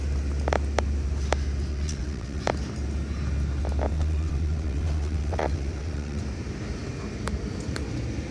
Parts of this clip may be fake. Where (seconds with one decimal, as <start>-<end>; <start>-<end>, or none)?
1.7-2.4; 3.9-6.2